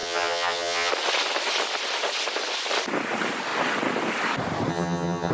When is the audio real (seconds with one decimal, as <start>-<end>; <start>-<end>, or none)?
0.9-4.7